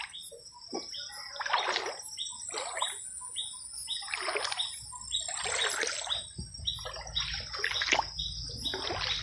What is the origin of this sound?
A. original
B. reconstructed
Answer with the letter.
A